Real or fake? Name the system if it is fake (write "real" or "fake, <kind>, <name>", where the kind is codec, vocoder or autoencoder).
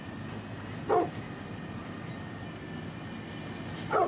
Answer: real